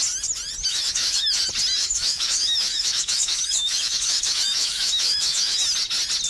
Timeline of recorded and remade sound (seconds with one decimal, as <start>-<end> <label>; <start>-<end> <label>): 0.0-0.7 recorded; 0.7-1.4 remade; 1.4-1.8 recorded; 1.8-5.6 remade; 5.6-6.3 recorded